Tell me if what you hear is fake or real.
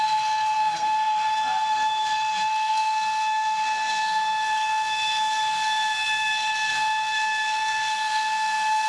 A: fake